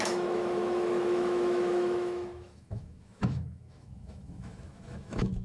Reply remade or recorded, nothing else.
remade